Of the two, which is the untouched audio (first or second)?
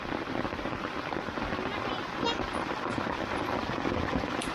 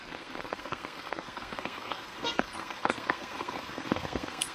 first